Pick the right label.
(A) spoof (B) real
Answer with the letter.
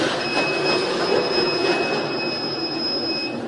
B